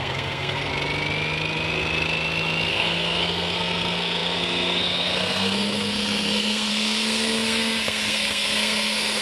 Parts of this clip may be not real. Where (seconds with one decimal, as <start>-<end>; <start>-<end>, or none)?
0.0-0.7; 2.7-9.2